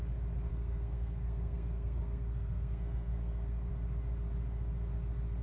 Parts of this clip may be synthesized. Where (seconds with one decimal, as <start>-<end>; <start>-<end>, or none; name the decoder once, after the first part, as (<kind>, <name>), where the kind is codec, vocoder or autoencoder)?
0.5-3.7 (codec, SNAC)